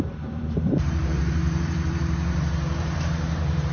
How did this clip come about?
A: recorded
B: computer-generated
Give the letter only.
B